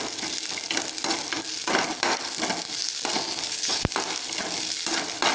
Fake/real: real